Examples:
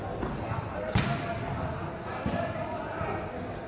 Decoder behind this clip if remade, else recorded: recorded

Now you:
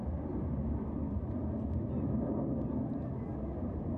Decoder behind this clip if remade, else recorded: recorded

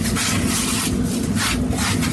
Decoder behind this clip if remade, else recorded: recorded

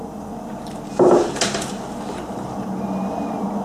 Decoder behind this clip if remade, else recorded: recorded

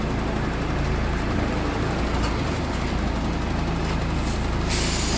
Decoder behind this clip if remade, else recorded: recorded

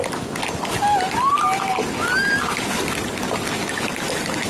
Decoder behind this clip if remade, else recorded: recorded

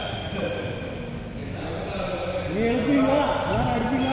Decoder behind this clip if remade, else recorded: recorded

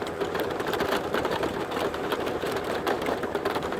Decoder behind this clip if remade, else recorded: remade, vocoder, BigVGAN v2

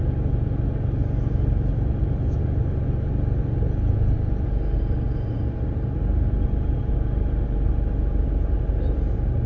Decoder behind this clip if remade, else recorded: recorded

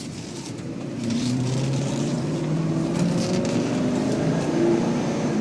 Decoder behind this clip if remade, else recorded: remade, vocoder, BigVGAN v2